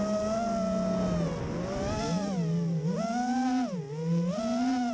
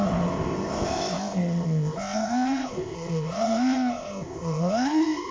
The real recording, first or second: first